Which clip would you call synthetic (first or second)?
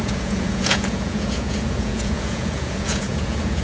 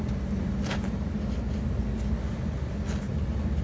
first